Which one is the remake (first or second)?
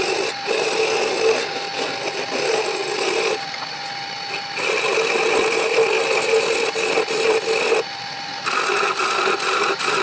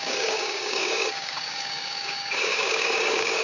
second